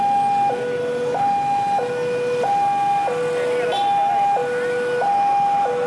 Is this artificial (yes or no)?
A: no